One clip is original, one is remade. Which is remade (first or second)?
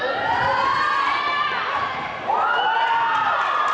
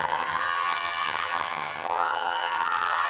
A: second